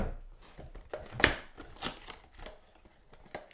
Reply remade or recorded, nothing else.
recorded